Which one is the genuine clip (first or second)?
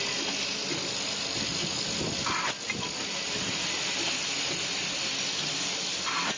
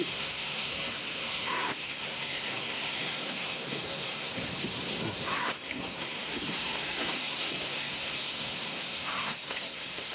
first